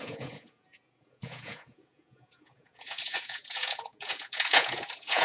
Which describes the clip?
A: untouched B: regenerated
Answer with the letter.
B